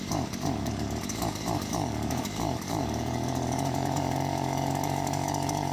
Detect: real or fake fake